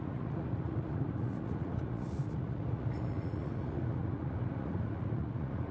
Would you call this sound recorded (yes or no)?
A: no